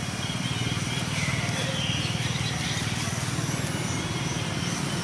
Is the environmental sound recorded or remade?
recorded